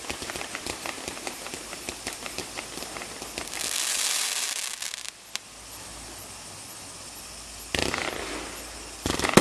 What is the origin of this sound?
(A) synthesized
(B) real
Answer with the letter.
B